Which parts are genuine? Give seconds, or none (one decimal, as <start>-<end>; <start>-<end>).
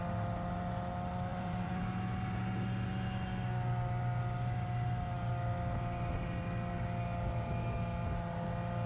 0.0-1.3; 1.8-8.9